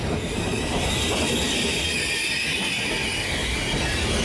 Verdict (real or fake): real